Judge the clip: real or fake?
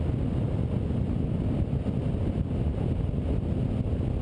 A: real